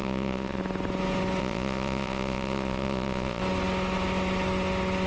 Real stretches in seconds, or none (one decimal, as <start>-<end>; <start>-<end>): 0.6-1.4; 3.4-5.1